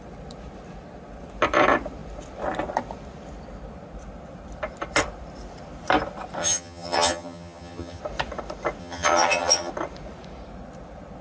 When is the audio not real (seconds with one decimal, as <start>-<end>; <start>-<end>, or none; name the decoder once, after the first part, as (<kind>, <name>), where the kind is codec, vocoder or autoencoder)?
6.4-8.0 (vocoder, HiFi-GAN); 8.8-9.7

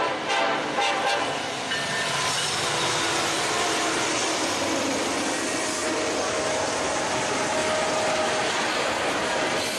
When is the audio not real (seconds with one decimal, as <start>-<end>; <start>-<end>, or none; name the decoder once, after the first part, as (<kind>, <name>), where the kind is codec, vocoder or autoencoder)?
none

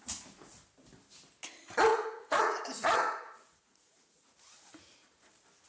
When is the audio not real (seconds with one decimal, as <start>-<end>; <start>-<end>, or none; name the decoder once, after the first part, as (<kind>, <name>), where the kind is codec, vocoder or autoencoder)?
1.9-5.3 (vocoder, Vocos)

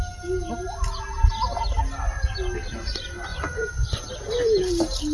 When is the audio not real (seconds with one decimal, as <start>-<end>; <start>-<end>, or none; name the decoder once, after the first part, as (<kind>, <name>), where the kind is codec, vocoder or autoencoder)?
3.3-4.0 (vocoder, Vocos)